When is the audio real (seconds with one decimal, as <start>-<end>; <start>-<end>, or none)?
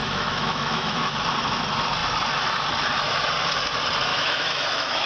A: 1.3-4.1